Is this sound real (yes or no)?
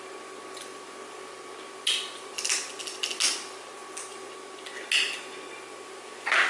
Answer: yes